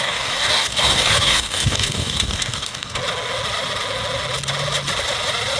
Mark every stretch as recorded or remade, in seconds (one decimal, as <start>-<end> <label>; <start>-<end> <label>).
0.0-3.0 remade; 3.0-5.6 recorded